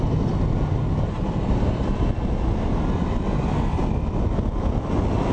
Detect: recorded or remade recorded